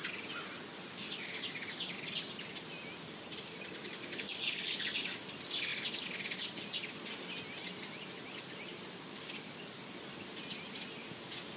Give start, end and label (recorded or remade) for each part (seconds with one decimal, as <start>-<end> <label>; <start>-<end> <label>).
0.0-11.0 recorded; 11.0-11.6 remade